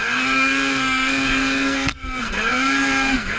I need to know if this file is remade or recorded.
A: remade